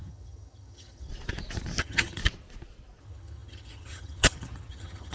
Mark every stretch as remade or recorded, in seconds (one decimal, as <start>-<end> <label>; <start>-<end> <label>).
0.0-1.1 remade; 1.1-1.8 recorded; 1.8-2.2 remade; 2.2-3.0 recorded; 3.0-5.1 remade